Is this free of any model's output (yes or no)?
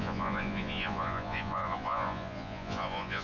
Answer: no